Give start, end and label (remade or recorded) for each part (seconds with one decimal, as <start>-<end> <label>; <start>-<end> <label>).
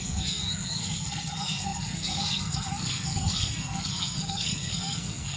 0.0-5.4 remade